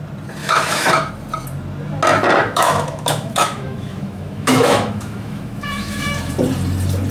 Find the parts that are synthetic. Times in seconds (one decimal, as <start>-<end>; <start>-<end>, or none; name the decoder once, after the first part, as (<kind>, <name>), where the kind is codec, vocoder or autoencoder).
0.4-1.1 (autoencoder, DAC-VAE); 2.4-6.3

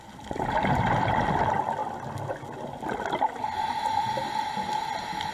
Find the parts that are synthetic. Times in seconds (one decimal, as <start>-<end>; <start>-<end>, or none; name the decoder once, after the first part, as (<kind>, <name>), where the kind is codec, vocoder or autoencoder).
none

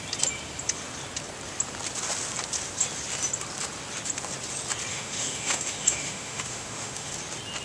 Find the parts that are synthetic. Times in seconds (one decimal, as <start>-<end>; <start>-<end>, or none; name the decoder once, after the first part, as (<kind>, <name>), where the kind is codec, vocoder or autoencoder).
4.9-7.1 (autoencoder, DAC-VAE)

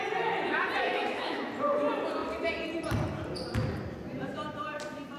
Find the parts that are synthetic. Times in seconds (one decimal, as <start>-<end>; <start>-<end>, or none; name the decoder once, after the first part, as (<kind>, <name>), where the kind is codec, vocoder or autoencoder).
0.8-1.5 (autoencoder, DAC-VAE)

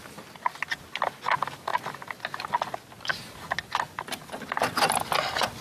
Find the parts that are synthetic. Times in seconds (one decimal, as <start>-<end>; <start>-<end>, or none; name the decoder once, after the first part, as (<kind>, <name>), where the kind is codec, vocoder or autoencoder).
none

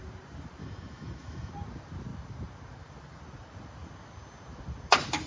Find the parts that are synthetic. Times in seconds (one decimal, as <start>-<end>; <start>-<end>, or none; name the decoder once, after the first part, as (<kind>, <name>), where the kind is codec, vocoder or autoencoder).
0.6-1.5 (autoencoder, DAC-VAE)